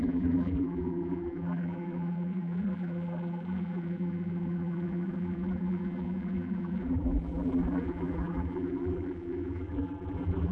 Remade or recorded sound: remade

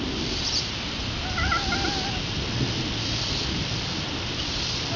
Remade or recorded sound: recorded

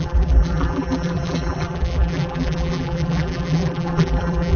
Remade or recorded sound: remade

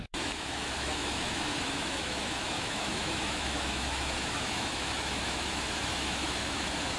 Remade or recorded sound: remade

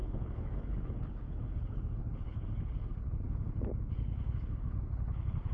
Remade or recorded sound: remade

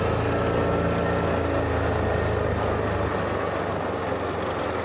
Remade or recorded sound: recorded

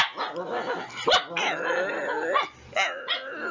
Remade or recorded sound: recorded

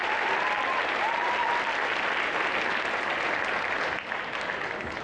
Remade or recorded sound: recorded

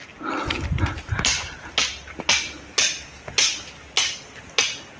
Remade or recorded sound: recorded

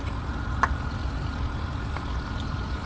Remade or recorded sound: recorded